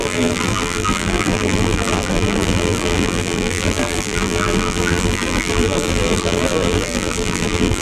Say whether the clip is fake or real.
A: fake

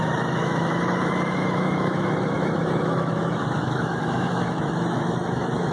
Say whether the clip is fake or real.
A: fake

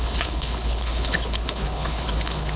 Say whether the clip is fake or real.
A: fake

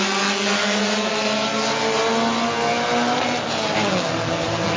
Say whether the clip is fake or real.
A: real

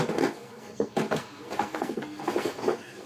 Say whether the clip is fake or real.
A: fake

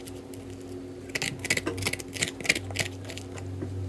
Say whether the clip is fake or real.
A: real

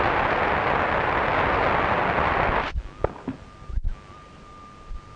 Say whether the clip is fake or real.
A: real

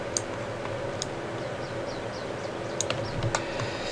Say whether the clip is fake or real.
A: real